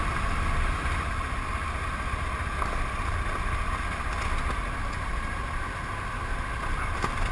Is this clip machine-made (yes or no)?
no